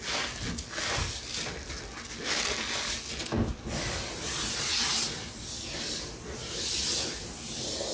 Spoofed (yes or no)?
no